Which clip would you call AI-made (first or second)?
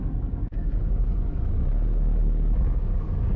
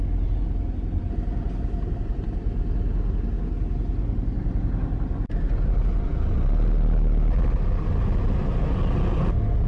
first